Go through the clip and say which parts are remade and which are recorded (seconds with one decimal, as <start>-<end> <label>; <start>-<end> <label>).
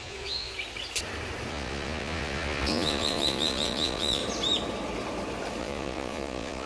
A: 0.0-0.5 remade; 0.5-1.5 recorded; 1.5-4.2 remade; 4.2-5.6 recorded; 5.6-6.7 remade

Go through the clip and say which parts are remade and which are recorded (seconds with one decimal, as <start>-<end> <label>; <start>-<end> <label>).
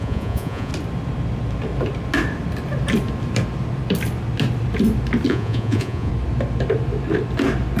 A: 0.0-0.7 remade; 0.7-5.3 recorded; 5.3-6.1 remade; 6.1-7.8 recorded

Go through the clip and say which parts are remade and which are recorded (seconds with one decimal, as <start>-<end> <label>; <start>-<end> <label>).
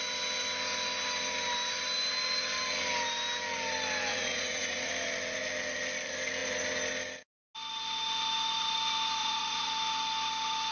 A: 0.0-4.1 recorded; 4.1-4.9 remade; 4.9-9.2 recorded; 9.2-9.7 remade; 9.7-10.7 recorded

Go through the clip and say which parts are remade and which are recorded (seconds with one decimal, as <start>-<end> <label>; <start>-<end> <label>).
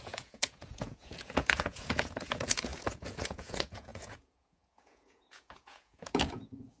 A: 0.0-6.8 remade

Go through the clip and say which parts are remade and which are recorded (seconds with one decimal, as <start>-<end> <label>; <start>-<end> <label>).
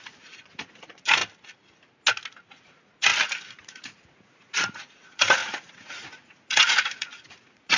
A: 0.0-1.2 remade; 1.2-2.5 recorded; 2.5-3.1 remade; 3.1-3.6 recorded; 3.6-7.8 remade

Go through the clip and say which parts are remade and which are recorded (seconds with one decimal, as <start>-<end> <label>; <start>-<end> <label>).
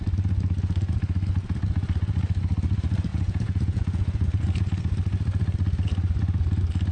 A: 0.0-3.1 recorded; 3.1-4.4 remade; 4.4-6.9 recorded